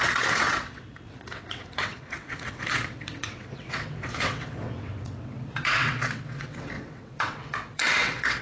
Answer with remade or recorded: remade